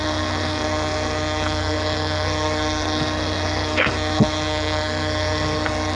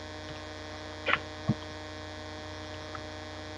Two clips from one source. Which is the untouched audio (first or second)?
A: second